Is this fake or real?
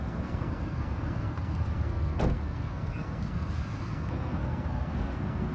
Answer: fake